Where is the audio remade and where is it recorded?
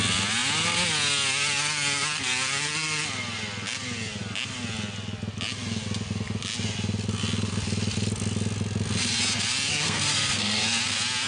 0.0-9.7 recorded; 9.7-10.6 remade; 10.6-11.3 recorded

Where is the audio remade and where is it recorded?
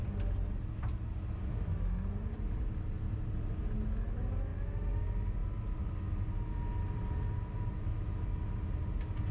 0.0-9.3 recorded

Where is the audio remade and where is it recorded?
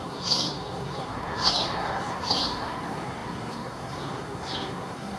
0.0-5.2 remade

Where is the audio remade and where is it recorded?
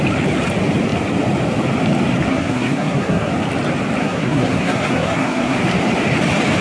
0.0-2.3 recorded; 2.3-3.3 remade; 3.3-4.0 recorded; 4.0-5.6 remade; 5.6-6.6 recorded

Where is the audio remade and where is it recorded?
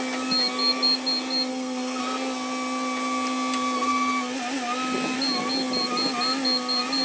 0.0-1.5 recorded; 1.5-2.0 remade; 2.0-7.0 recorded